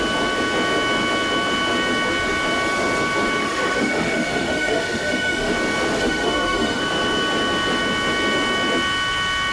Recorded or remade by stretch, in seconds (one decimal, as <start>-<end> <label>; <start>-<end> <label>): 0.0-3.4 recorded; 3.4-5.5 remade; 5.5-5.9 recorded; 5.9-6.8 remade; 6.8-9.5 recorded